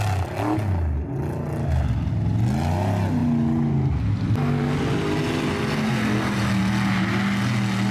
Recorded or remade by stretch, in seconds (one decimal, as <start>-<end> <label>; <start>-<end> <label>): 0.0-7.9 recorded